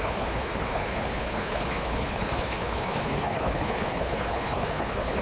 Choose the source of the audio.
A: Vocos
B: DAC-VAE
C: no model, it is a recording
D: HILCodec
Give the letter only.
D